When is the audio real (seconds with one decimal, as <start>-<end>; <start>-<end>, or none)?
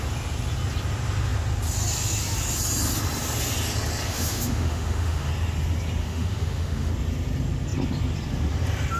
0.0-4.1; 5.3-6.0; 6.9-9.0